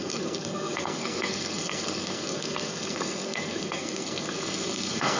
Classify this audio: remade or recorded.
remade